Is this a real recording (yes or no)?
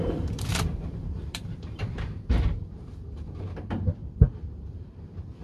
no